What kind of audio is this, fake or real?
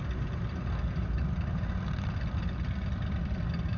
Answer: real